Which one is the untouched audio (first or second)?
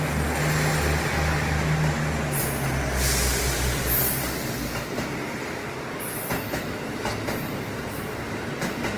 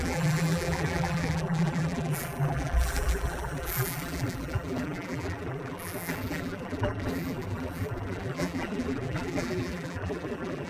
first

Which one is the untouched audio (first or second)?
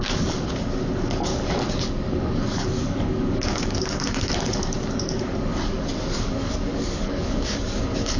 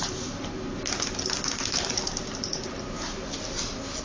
second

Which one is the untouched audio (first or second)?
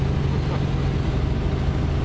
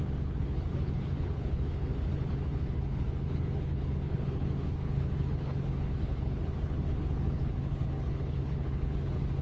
first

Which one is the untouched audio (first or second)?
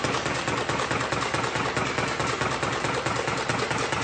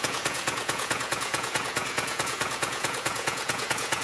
first